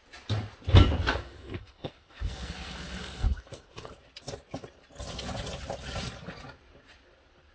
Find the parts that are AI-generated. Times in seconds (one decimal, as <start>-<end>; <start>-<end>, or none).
1.1-3.9